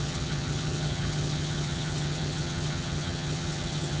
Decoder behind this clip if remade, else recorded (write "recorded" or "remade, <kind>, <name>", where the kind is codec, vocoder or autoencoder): remade, vocoder, HiFi-GAN